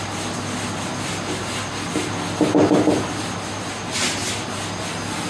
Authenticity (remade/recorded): recorded